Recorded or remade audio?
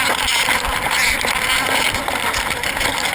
recorded